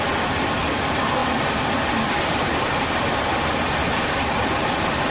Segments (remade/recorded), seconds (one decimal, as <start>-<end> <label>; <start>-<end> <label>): 0.0-5.1 recorded